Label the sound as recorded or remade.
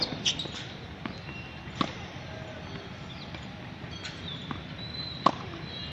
recorded